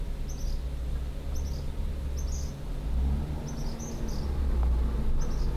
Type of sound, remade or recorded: recorded